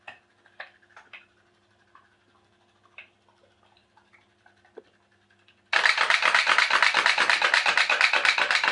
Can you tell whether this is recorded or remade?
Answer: remade